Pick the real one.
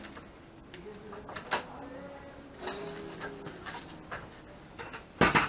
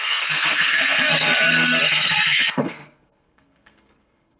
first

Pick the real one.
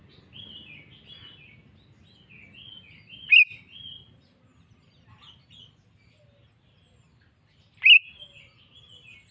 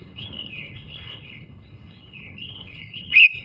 first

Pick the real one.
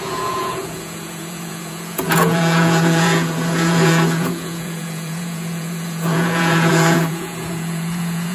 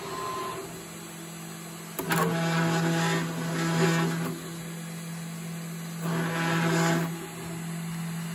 second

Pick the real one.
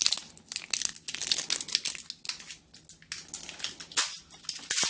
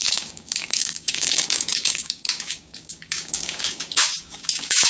first